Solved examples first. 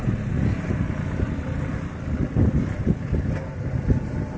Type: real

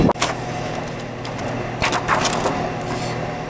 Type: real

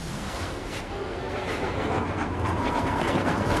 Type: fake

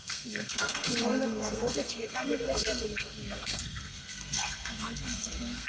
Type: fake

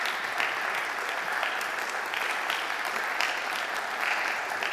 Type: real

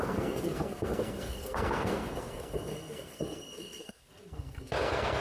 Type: fake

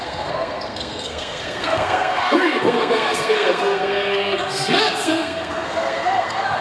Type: fake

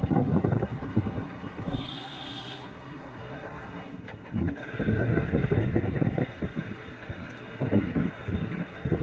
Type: fake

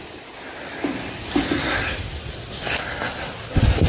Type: real